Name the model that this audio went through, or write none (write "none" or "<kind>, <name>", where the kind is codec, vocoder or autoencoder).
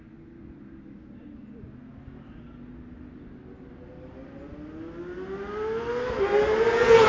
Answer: none